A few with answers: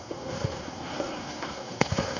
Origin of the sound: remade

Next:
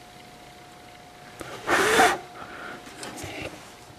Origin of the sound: recorded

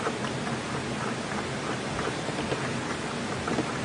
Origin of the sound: recorded